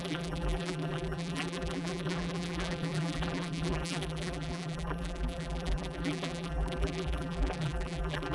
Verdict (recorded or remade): remade